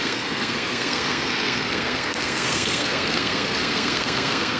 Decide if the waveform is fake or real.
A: fake